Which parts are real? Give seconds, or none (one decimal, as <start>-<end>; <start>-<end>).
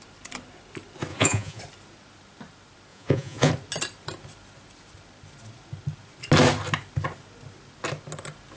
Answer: 0.0-1.1; 1.6-2.9; 3.5-8.6